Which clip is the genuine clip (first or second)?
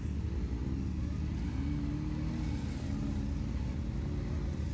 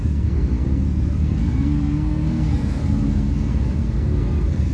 first